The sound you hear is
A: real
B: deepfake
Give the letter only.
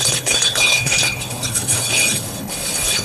B